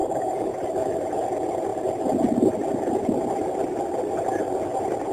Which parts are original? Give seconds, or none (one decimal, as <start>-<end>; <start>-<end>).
0.5-5.1